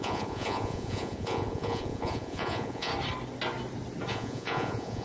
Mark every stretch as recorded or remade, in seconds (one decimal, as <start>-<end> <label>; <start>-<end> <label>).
0.0-2.9 remade; 2.9-4.1 recorded; 4.1-5.0 remade